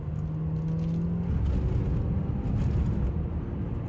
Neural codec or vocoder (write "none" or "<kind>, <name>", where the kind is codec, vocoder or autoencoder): none